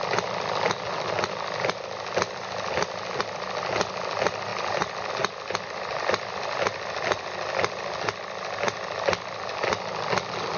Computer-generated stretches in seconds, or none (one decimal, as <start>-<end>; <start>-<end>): none